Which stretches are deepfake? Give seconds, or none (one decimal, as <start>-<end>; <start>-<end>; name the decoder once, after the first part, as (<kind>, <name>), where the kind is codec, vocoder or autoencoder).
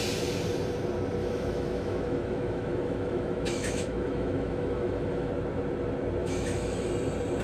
1.2-5.3 (autoencoder, DAC-VAE); 6.2-6.9